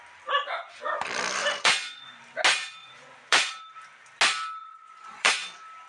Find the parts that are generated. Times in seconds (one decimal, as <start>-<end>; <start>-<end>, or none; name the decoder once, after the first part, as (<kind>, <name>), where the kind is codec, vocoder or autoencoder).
1.4-2.2 (vocoder, Vocos); 2.8-3.5; 4.6-5.3